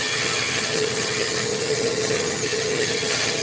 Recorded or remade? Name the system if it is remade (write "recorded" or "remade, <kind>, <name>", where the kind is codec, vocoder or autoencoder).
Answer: remade, vocoder, HiFi-GAN